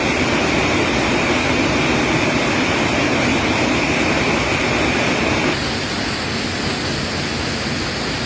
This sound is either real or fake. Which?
real